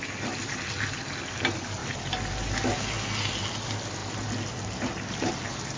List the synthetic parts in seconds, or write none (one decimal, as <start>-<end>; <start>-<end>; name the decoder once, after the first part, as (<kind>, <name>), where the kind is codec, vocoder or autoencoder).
none